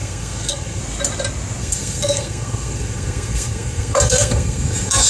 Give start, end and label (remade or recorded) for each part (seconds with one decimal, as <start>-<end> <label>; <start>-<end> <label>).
0.0-0.8 remade; 0.8-1.6 recorded; 1.6-5.1 remade